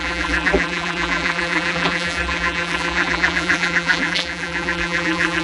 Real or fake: fake